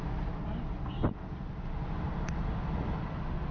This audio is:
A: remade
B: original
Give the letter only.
B